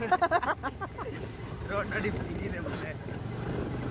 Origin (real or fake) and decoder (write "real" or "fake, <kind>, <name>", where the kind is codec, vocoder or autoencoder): real